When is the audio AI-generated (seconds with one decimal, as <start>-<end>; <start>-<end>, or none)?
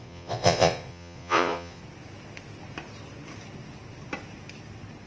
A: 0.0-1.8